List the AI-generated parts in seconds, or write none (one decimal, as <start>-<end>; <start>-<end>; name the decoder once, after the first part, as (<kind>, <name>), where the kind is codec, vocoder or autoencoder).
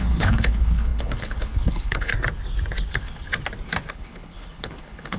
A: 0.0-2.1 (codec, HILCodec); 2.9-3.3; 3.9-5.2